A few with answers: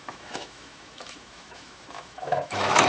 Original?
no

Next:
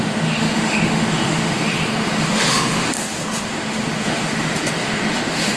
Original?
no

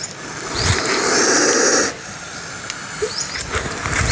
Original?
yes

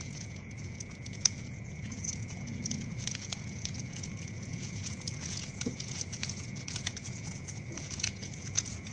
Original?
no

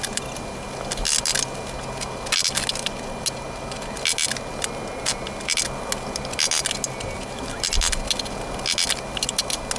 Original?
yes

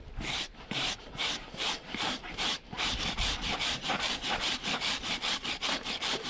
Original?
no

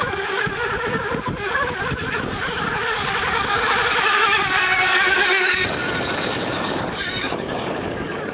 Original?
no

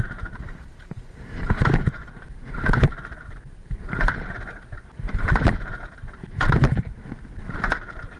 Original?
no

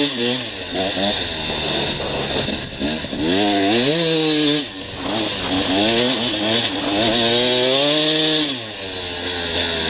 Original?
yes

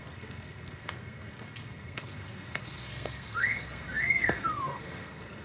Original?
no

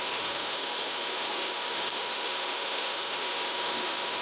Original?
no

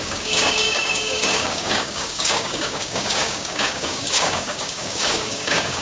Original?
no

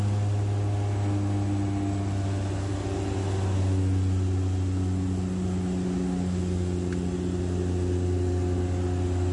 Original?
yes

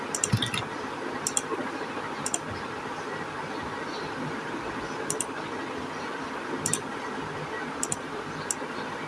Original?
yes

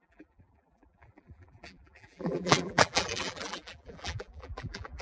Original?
no